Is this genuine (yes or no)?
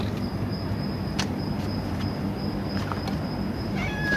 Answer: yes